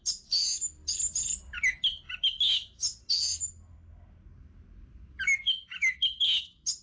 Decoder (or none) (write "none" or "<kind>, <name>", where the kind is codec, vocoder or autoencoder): none